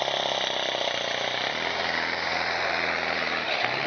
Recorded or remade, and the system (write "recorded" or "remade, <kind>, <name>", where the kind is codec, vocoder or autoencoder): recorded